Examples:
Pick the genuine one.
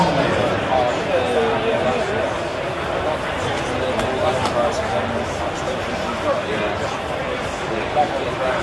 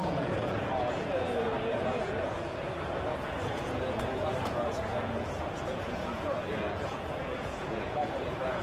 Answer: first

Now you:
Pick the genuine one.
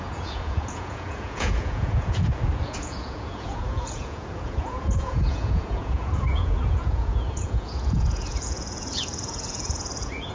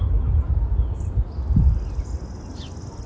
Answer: second